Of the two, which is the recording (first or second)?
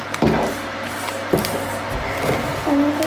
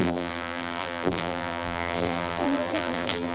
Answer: first